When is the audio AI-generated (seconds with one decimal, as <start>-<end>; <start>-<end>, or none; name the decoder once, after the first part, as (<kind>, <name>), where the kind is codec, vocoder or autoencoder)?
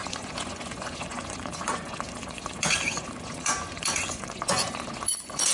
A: 0.0-5.5 (vocoder, Vocos)